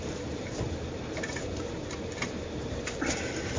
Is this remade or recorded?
remade